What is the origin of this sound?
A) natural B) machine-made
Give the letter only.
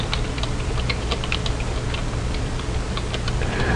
A